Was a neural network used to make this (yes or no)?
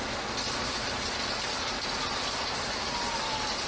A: no